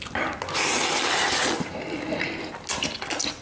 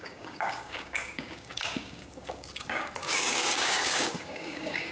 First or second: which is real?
first